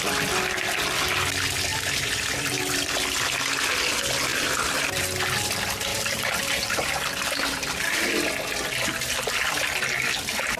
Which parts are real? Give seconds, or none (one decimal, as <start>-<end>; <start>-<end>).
0.0-1.7; 2.9-4.3; 5.0-5.9; 8.1-10.6